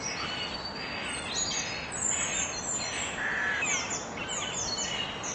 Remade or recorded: recorded